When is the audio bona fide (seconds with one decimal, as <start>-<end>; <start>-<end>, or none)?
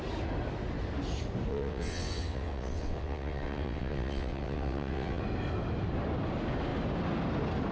0.0-1.5; 5.2-7.7